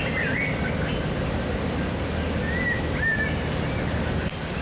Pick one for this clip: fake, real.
real